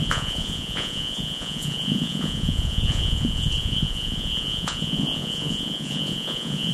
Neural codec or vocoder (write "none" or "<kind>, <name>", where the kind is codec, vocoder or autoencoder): vocoder, Vocos